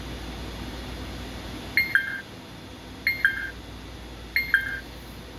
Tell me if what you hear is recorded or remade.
recorded